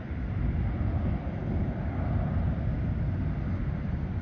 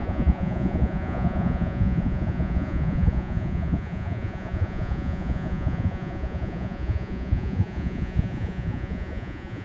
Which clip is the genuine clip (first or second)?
first